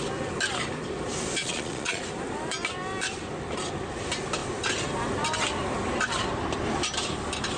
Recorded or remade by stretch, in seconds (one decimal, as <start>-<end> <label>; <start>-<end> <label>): 0.0-1.4 recorded; 1.4-2.0 remade; 2.0-7.6 recorded